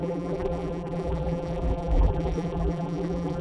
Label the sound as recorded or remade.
remade